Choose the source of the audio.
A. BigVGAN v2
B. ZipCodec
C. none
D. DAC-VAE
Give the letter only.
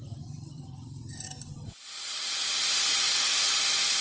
A